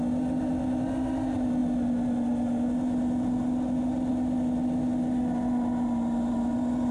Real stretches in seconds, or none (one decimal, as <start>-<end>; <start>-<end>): 0.0-6.9